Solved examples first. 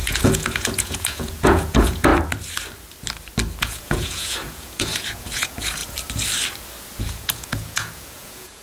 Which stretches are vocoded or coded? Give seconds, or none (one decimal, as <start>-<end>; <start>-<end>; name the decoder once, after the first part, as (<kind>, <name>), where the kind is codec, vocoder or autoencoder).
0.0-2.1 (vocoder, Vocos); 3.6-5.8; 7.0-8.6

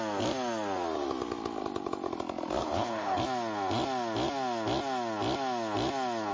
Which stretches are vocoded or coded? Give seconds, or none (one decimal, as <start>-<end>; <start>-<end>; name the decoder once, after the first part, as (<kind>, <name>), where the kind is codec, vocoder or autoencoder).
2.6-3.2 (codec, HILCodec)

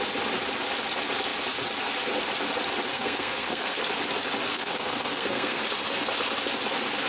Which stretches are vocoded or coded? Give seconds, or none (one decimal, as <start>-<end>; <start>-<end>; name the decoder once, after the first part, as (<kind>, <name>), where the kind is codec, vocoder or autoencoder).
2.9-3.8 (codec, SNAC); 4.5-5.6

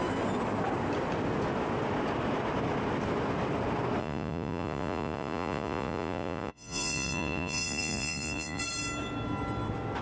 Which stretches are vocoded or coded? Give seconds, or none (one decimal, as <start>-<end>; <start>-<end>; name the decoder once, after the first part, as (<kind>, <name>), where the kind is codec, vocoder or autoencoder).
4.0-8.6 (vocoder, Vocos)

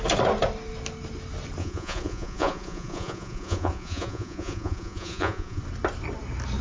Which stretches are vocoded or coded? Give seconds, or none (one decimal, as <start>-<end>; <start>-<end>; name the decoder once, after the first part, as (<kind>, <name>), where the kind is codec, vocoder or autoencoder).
1.6-5.6 (vocoder, Vocos)

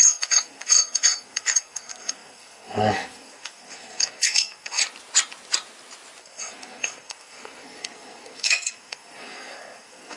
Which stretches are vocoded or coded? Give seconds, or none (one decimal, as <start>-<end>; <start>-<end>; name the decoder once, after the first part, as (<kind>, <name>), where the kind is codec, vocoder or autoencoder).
0.0-4.8 (codec, SNAC); 6.2-10.2